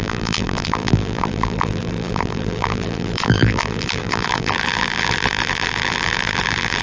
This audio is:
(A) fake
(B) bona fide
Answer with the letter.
A